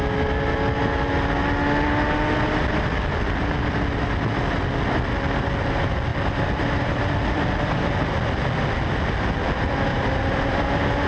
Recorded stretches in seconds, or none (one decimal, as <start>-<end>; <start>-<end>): 0.0-6.1; 7.8-9.9; 10.7-11.1

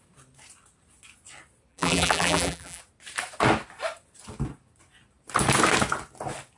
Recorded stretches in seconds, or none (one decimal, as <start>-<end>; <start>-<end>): 0.0-1.7; 2.8-6.6

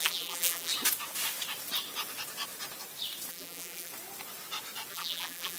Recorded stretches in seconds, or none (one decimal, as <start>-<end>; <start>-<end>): 0.7-3.3; 3.9-4.9